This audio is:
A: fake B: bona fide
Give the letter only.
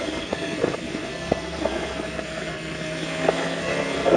A